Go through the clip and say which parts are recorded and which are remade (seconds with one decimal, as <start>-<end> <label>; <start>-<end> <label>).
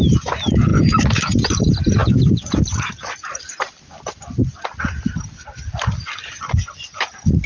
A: 0.0-0.7 recorded; 0.7-1.6 remade; 1.6-2.0 recorded; 2.0-4.4 remade; 4.4-6.9 recorded; 6.9-7.5 remade